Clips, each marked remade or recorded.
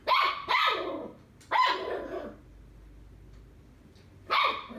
recorded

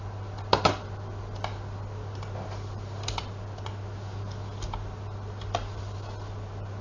recorded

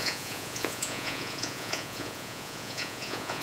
remade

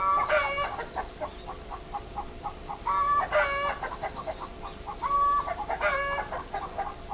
recorded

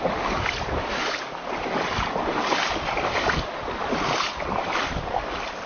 recorded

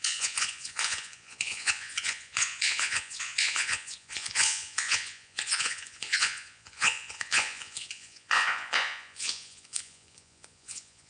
remade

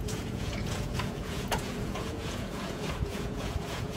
remade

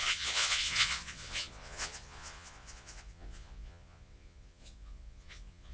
remade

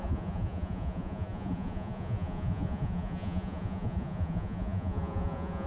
remade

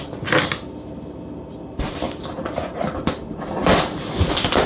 recorded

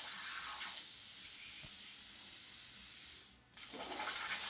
recorded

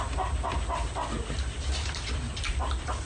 recorded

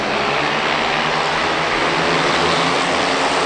recorded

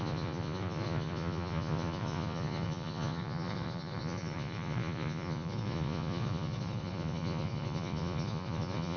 remade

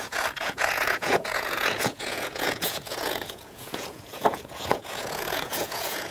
remade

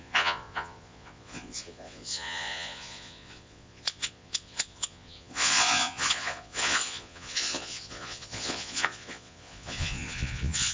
remade